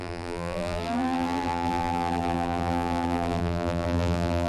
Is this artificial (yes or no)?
yes